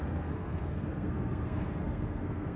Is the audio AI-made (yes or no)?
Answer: yes